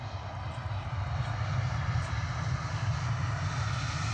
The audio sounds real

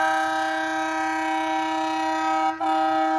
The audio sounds real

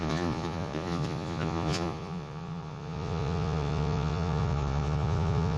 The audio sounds fake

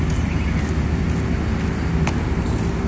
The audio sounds real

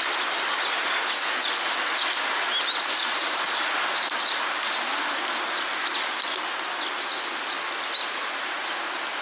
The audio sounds real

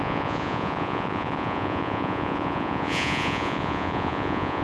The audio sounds fake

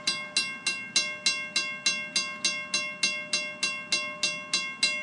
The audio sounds real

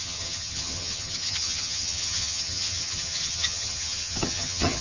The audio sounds fake